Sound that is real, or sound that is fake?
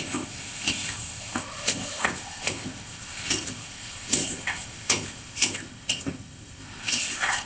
fake